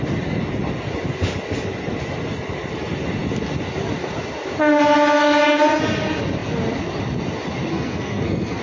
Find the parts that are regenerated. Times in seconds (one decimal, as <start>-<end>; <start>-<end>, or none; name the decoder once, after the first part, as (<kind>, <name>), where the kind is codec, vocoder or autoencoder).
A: 7.7-8.6 (codec, SNAC)